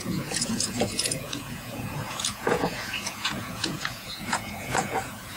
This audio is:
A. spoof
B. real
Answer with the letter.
A